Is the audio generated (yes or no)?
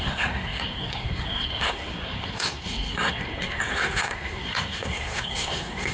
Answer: yes